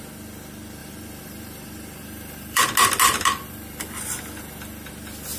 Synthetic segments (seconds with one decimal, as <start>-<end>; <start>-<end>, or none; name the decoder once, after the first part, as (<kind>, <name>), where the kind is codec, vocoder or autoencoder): 0.8-2.6 (vocoder, BigVGAN v2)